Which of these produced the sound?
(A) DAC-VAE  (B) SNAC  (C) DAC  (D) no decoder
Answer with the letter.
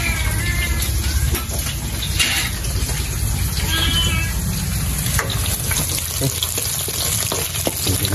D